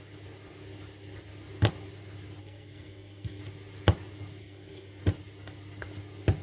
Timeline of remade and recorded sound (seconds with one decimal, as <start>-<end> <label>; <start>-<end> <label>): 0.0-2.4 recorded; 2.4-3.4 remade; 3.4-4.4 recorded; 4.4-5.0 remade; 5.0-6.4 recorded